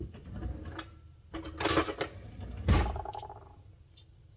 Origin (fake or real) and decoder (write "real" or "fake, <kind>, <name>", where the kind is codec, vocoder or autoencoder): real